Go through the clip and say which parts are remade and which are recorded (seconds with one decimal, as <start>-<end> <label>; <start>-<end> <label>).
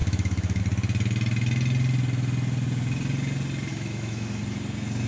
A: 0.0-0.6 remade; 0.6-3.7 recorded; 3.7-4.4 remade; 4.4-5.1 recorded